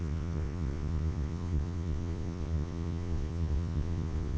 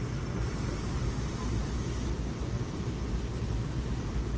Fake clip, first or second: first